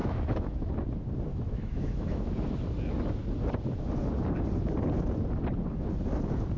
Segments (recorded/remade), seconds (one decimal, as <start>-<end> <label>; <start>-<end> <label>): 0.0-0.7 remade; 0.7-1.3 recorded; 1.3-2.3 remade; 2.3-6.6 recorded